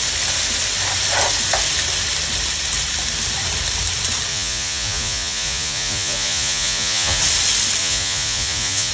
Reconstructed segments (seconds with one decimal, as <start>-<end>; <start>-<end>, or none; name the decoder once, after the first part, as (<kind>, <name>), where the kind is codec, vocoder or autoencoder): 4.3-7.2 (vocoder, Vocos); 7.8-8.9